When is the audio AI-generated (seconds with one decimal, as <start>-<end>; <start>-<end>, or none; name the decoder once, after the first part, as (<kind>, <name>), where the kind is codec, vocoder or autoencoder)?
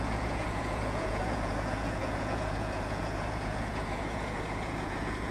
0.0-5.3 (vocoder, Vocos)